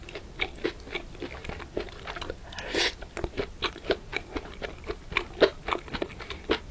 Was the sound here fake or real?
real